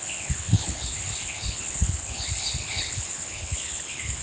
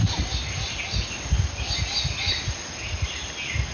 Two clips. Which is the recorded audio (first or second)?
second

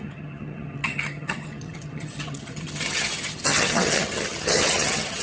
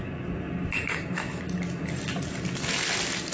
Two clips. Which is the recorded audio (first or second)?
second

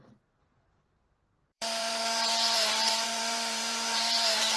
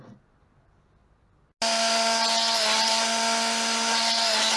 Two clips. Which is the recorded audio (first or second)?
second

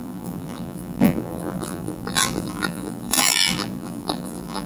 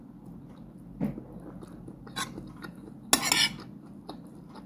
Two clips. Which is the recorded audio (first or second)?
second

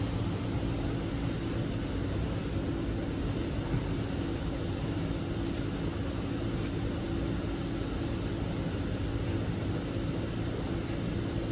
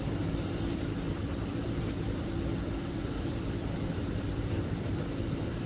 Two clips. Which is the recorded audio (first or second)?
first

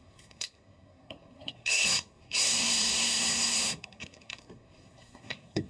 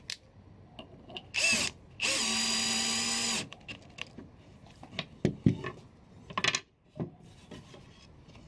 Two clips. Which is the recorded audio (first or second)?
second